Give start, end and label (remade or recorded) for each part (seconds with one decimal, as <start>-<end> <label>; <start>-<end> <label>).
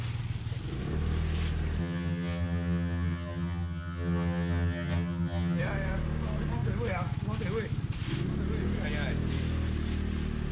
0.0-1.8 recorded; 1.8-5.6 remade; 5.6-10.5 recorded